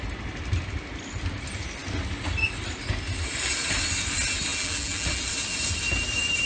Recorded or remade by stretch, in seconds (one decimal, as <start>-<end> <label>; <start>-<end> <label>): 0.0-4.5 recorded; 4.5-5.3 remade; 5.3-6.5 recorded